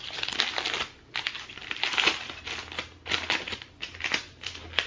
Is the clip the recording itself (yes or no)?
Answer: yes